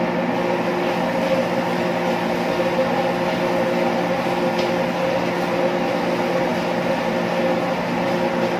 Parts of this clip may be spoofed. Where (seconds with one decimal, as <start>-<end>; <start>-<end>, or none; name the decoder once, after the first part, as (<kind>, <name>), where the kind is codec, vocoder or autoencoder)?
none